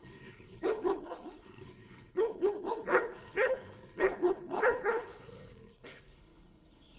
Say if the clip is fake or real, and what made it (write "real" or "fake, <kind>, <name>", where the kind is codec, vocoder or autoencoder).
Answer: fake, codec, HILCodec